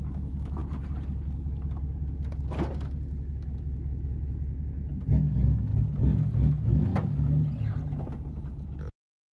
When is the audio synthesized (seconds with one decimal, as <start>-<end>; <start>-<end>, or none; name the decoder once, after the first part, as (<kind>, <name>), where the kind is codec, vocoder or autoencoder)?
0.0-0.6 (autoencoder, DAC-VAE); 3.2-5.7; 6.5-6.9; 8.5-9.3